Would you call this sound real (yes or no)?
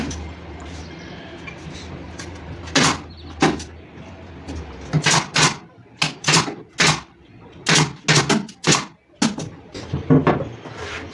yes